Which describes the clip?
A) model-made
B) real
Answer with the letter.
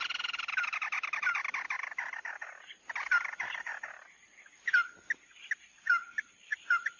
B